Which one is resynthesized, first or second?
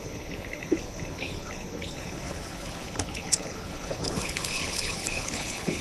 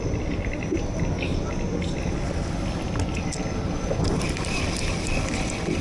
first